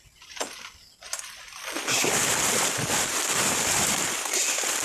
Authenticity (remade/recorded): remade